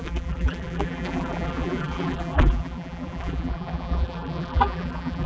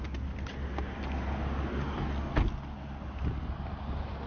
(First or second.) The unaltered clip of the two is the second